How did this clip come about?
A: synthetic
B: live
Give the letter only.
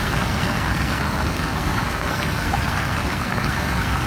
A